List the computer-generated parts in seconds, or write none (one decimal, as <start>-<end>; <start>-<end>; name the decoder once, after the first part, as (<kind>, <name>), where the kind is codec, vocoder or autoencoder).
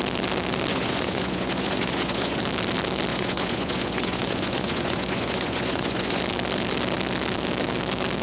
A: 0.7-2.4 (vocoder, Vocos); 3.1-6.2